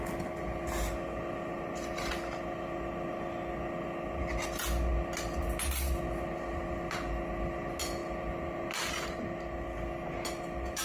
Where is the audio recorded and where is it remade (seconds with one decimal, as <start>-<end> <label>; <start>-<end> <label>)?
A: 0.0-10.8 recorded